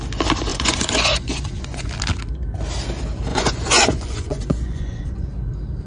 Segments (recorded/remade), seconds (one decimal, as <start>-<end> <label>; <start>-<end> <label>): 0.0-0.5 recorded; 0.5-1.9 remade; 1.9-3.3 recorded; 3.3-5.3 remade; 5.3-5.9 recorded